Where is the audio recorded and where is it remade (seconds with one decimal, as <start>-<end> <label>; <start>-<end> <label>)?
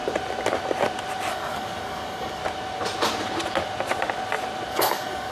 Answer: 0.0-1.3 recorded; 1.3-2.4 remade; 2.4-4.7 recorded; 4.7-5.3 remade